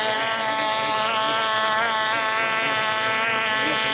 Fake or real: real